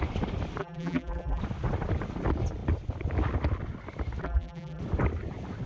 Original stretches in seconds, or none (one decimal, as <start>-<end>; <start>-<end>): 0.0-0.6; 1.4-4.2; 4.8-5.7